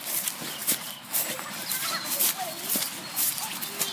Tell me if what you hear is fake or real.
real